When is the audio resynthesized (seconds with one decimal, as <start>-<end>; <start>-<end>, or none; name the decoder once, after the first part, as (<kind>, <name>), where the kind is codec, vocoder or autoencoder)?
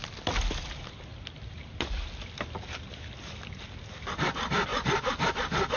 none